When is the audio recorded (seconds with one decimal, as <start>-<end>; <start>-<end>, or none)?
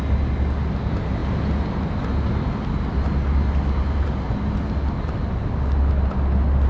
0.0-6.7